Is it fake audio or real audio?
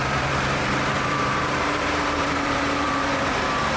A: fake